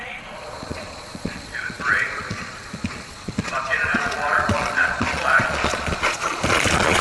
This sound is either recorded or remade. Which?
remade